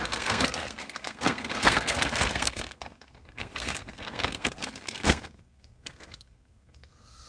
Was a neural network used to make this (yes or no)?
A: yes